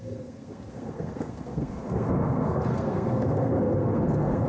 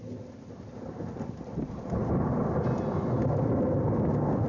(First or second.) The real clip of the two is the second